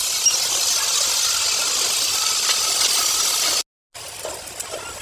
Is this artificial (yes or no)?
no